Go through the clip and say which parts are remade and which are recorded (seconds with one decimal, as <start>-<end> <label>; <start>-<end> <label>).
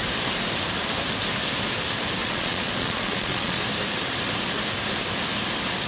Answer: 0.0-2.2 recorded; 2.2-3.6 remade; 3.6-5.9 recorded